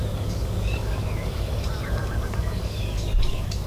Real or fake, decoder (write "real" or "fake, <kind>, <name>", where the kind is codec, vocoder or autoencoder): fake, codec, DAC